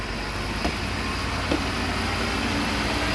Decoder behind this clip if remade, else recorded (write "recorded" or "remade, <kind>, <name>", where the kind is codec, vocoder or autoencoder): recorded